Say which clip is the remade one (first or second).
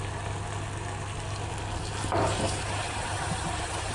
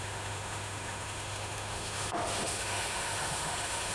second